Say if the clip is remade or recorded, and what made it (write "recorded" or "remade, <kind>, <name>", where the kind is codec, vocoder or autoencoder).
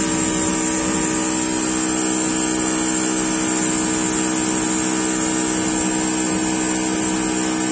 recorded